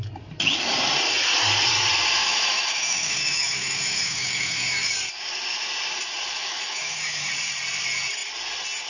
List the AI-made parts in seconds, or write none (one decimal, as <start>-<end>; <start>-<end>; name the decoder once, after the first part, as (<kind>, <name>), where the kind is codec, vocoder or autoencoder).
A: 2.2-4.9 (autoencoder, DAC-VAE); 6.4-7.3